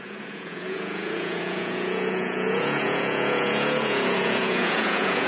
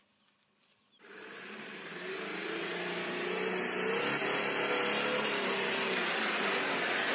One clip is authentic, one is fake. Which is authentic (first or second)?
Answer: second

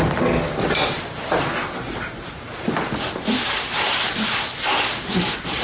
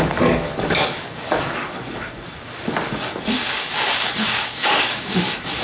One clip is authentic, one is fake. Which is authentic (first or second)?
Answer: first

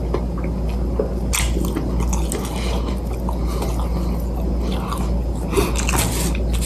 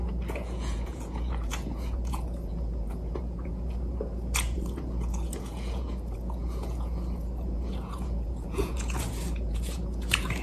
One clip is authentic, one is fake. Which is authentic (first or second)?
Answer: first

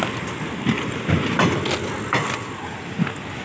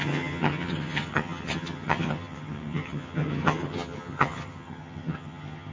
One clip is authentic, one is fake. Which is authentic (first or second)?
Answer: first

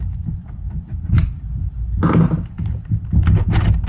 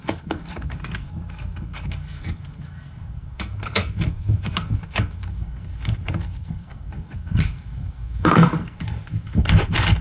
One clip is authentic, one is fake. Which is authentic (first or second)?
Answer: first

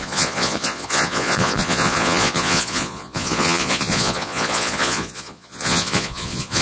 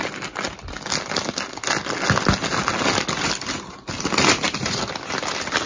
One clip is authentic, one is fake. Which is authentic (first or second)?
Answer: second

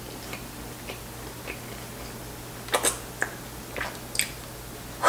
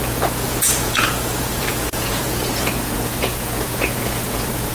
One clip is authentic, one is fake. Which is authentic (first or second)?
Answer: first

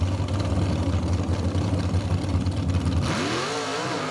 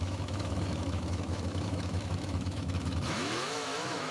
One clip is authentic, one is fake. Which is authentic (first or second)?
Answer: first